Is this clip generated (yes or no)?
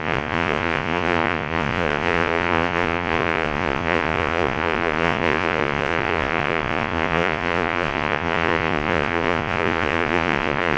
yes